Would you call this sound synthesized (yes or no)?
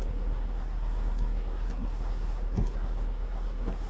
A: yes